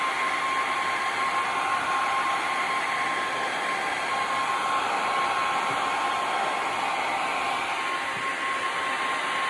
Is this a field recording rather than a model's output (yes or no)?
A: yes